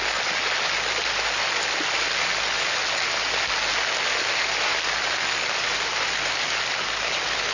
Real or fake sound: real